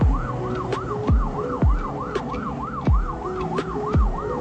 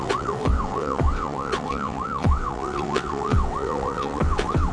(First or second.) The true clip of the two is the first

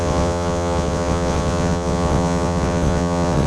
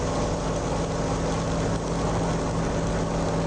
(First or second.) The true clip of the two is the second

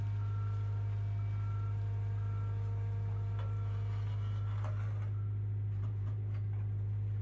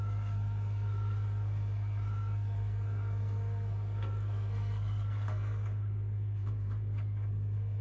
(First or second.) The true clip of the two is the first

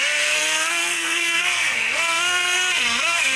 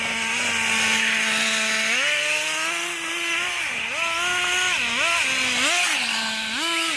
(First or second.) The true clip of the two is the second